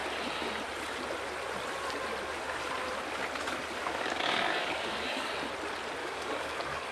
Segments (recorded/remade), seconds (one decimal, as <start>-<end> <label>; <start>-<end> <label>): 0.0-3.8 recorded; 3.8-5.3 remade; 5.3-6.0 recorded; 6.0-6.9 remade